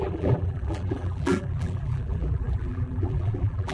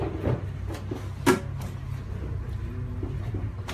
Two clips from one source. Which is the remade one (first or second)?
first